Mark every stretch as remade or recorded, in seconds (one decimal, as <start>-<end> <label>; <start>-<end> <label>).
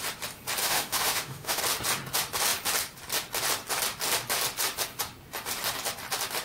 0.0-0.6 recorded; 0.6-1.6 remade; 1.6-6.4 recorded